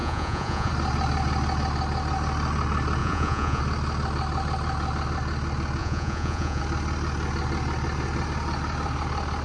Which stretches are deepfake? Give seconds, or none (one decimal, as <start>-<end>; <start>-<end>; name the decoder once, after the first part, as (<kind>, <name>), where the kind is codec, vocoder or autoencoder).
0.0-0.7 (vocoder, Vocos); 3.0-3.6; 5.8-6.6